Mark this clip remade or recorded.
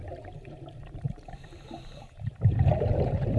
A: remade